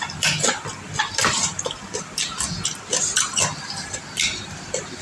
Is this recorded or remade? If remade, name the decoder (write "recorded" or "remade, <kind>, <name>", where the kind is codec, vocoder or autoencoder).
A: remade, vocoder, BigVGAN v2